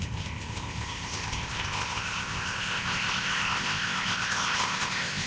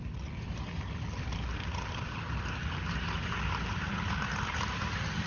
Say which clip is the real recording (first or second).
second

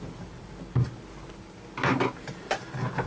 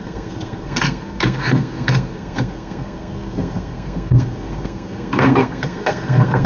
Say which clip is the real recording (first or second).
first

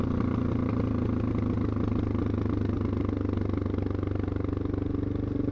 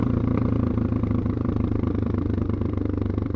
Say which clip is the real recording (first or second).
first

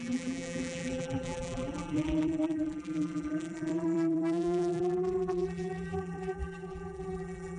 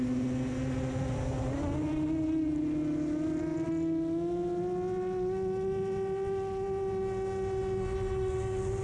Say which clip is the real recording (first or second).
second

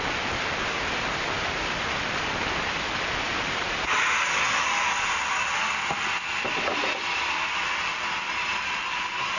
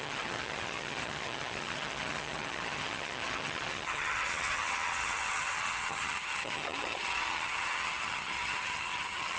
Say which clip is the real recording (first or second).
first